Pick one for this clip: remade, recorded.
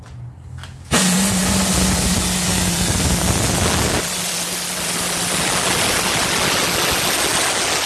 recorded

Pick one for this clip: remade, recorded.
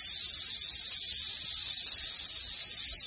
recorded